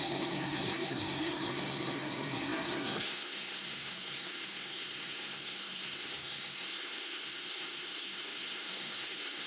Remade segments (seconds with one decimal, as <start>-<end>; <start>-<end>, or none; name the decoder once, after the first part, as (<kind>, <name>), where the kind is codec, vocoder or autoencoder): 0.0-9.5 (codec, SNAC)

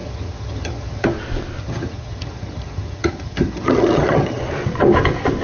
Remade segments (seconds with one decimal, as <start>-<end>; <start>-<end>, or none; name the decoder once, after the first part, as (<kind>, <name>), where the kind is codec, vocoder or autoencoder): 0.0-1.1 (vocoder, HiFi-GAN); 1.6-4.4